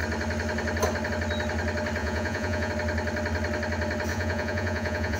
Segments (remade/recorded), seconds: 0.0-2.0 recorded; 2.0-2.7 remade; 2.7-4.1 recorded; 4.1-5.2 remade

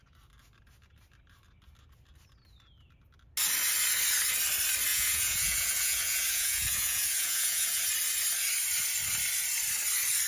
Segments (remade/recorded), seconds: 0.0-4.9 recorded; 4.9-7.8 remade; 7.8-10.3 recorded

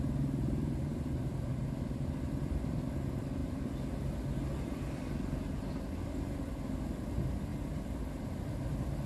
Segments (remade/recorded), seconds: 0.0-9.1 recorded

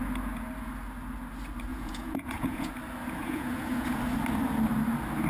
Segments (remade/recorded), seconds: 0.0-1.7 recorded; 1.7-2.7 remade; 2.7-3.2 recorded; 3.2-4.0 remade; 4.0-5.3 recorded

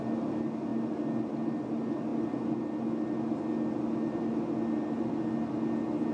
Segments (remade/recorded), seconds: 0.0-6.1 recorded

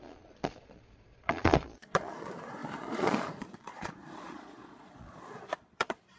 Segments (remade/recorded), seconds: 0.0-6.2 remade